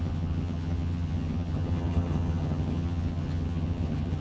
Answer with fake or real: fake